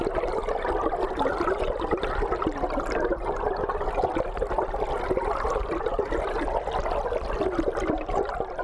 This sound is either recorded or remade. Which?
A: remade